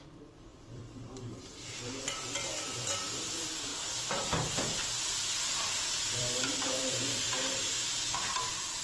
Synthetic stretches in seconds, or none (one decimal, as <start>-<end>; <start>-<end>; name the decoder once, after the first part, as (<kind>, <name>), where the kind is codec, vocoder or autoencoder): 0.0-8.8 (vocoder, BigVGAN v2)